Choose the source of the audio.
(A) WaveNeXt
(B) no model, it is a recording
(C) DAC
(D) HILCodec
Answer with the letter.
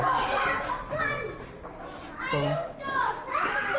B